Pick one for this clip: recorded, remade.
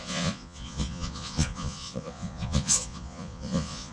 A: remade